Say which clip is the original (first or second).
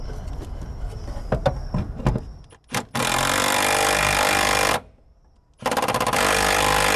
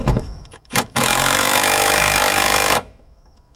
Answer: first